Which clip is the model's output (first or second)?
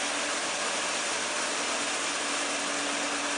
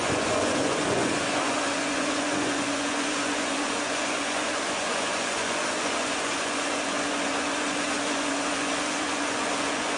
second